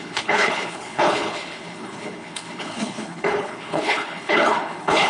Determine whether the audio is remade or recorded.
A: remade